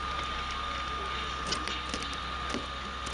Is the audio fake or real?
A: real